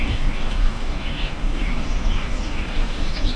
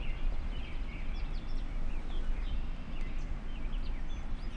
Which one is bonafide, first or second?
second